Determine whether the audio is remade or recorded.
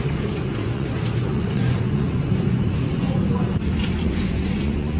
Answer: remade